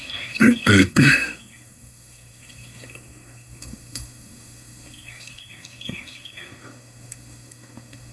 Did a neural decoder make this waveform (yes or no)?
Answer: yes